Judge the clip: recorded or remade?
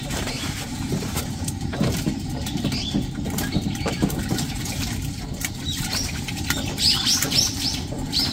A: remade